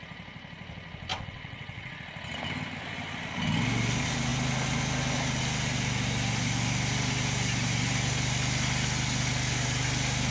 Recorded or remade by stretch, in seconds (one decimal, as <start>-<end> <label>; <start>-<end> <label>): 0.0-1.1 recorded; 1.1-1.9 remade; 1.9-10.3 recorded